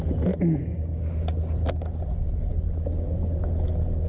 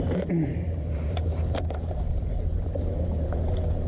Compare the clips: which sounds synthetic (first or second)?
second